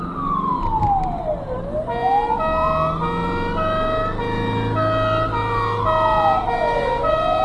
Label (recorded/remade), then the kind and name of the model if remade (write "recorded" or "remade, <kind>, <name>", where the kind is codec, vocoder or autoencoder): recorded